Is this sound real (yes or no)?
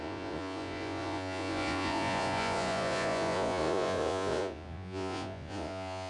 no